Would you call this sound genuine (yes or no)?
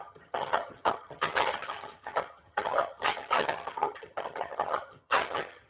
no